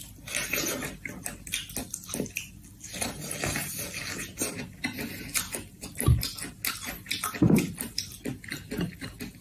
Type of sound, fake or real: real